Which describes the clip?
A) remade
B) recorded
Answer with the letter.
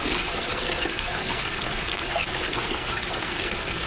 A